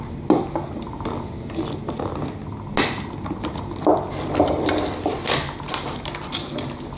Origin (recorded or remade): recorded